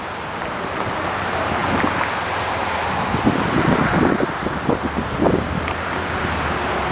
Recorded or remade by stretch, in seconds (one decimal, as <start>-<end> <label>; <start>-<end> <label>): 0.0-6.9 recorded